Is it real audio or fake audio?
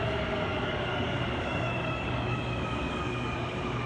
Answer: fake